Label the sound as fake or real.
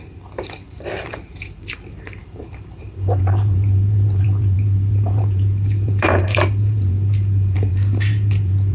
fake